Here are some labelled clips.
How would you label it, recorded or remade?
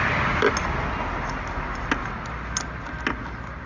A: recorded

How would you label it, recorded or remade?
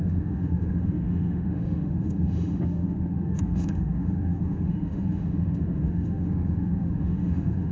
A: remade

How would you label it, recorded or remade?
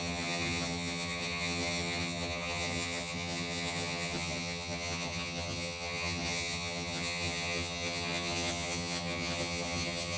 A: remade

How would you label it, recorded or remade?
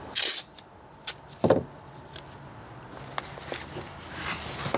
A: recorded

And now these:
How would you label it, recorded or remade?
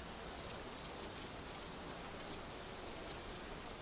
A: recorded